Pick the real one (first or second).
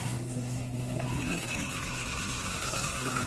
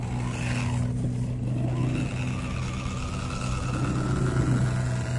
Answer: second